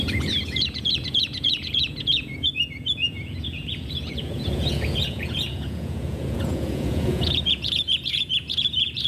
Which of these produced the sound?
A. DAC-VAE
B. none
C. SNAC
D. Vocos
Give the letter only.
D